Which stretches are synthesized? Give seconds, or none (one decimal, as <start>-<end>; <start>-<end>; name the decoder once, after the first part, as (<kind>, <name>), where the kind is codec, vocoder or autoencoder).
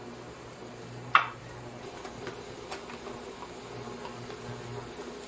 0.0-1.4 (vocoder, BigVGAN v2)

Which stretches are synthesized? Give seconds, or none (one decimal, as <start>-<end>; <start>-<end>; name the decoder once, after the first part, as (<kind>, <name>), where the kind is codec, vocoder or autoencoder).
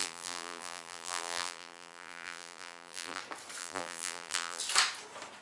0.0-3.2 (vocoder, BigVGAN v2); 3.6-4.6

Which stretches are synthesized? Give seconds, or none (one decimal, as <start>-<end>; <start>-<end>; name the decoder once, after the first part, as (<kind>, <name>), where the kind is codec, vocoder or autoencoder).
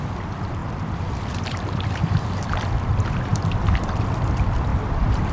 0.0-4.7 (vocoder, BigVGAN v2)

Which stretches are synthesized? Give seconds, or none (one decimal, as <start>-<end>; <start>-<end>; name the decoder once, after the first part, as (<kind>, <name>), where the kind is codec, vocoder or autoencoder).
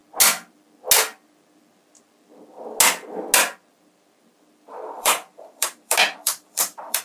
4.7-7.0 (vocoder, BigVGAN v2)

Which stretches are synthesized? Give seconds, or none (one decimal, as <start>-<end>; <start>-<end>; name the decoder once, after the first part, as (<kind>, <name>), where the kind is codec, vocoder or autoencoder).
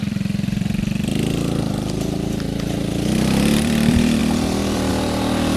0.0-1.1 (vocoder, BigVGAN v2); 1.6-5.6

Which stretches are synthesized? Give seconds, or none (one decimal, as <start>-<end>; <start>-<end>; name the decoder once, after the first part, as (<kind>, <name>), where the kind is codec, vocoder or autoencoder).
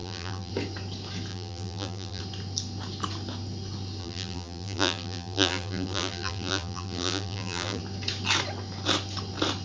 0.0-0.5 (vocoder, BigVGAN v2); 1.3-2.2; 4.0-7.8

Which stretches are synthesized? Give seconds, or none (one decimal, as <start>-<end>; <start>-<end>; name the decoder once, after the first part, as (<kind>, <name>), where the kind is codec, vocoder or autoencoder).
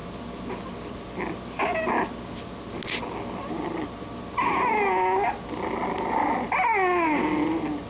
none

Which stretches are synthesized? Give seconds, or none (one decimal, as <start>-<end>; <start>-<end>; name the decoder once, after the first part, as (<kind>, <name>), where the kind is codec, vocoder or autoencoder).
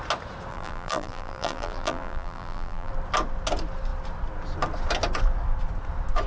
0.5-2.9 (vocoder, BigVGAN v2)